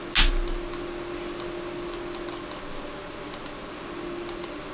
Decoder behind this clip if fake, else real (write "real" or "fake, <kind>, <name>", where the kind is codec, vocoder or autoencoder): real